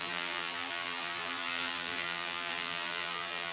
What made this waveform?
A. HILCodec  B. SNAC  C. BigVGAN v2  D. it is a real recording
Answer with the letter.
C